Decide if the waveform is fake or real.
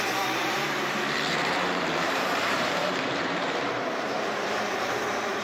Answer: fake